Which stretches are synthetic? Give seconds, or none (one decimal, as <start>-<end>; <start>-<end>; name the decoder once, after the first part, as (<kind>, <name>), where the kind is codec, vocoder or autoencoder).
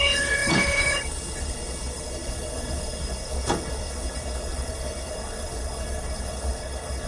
0.0-7.1 (codec, HILCodec)